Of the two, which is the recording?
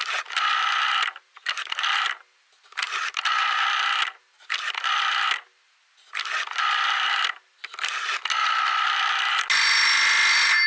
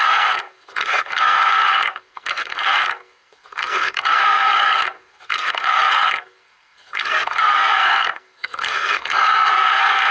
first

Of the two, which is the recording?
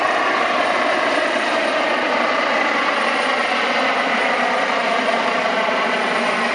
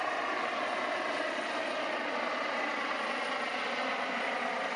second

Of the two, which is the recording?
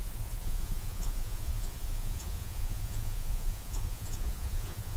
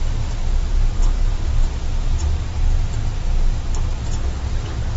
second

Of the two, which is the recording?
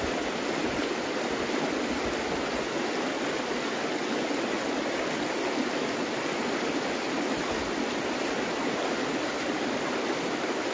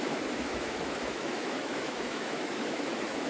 first